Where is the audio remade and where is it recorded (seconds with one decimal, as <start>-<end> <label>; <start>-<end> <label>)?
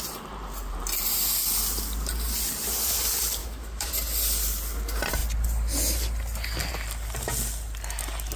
0.0-3.4 recorded; 3.4-3.9 remade; 3.9-8.4 recorded